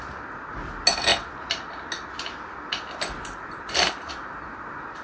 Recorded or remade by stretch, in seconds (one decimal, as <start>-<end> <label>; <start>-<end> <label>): 0.0-5.0 recorded